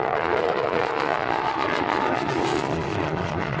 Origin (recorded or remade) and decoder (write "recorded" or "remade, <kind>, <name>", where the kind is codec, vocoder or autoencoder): remade, vocoder, Vocos